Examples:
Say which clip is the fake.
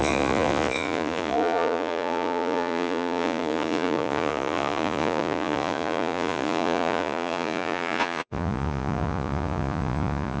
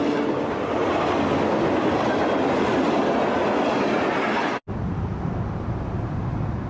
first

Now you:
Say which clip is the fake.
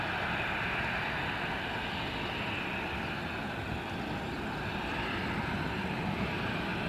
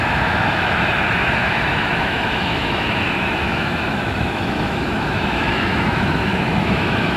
second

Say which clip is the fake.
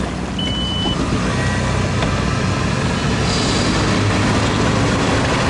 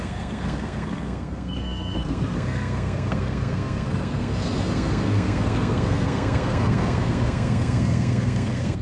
second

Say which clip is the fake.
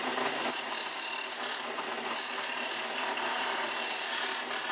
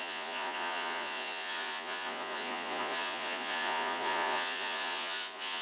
second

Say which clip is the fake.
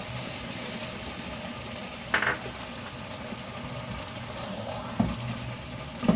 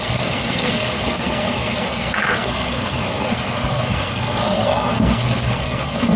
second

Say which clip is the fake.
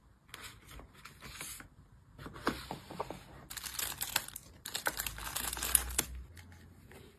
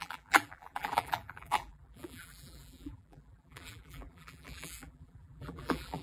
second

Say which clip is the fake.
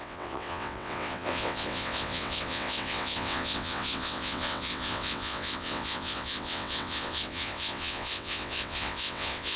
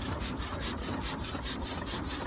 first